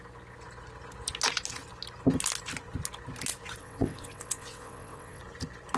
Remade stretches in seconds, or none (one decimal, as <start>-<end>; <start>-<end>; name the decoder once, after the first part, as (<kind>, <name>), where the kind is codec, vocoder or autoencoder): 3.6-5.2 (vocoder, WaveNeXt)